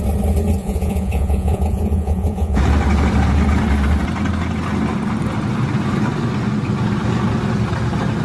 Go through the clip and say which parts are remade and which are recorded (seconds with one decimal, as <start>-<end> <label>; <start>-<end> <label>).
0.0-0.6 recorded; 0.6-2.6 remade; 2.6-8.2 recorded